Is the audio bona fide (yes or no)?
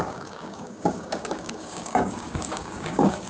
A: no